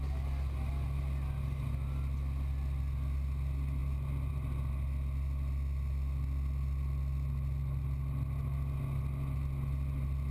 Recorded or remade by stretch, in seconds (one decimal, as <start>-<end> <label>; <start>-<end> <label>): 0.0-10.3 recorded